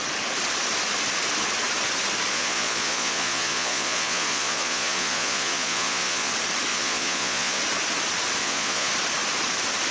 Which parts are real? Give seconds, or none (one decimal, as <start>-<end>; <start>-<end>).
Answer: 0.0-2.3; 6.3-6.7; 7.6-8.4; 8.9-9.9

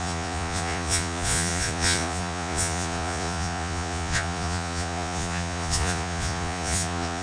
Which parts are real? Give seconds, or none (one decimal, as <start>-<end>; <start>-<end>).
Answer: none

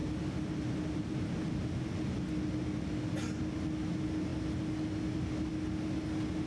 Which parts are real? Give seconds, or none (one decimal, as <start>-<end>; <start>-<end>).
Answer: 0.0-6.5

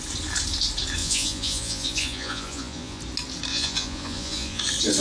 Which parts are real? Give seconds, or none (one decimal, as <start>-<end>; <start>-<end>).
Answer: 0.0-1.0; 3.0-3.5; 4.6-5.0